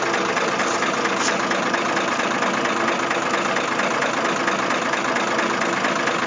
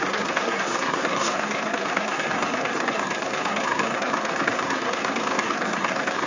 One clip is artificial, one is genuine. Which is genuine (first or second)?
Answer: first